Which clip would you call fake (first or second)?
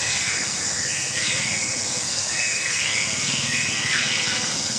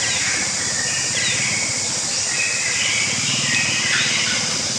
first